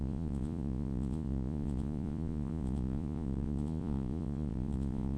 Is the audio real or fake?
fake